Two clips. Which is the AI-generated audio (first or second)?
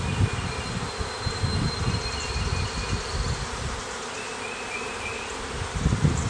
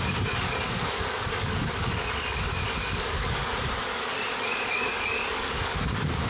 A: second